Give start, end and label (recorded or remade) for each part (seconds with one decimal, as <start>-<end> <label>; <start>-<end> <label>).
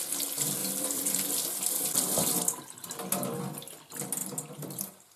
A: 0.0-0.6 recorded; 0.6-3.4 remade; 3.4-4.2 recorded; 4.2-5.2 remade